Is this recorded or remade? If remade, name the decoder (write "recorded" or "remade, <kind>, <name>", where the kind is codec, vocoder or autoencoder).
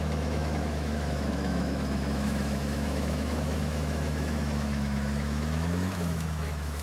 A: remade, autoencoder, DAC-VAE